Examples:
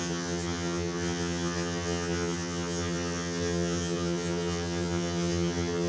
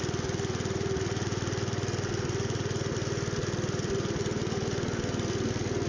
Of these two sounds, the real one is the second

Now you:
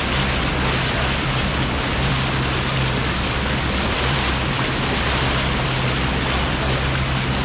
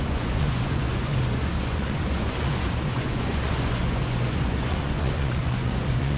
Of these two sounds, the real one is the first